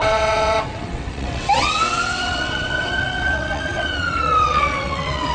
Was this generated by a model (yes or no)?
yes